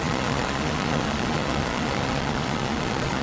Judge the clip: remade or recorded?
remade